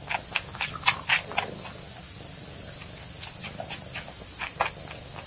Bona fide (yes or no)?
yes